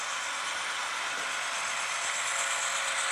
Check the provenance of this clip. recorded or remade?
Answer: recorded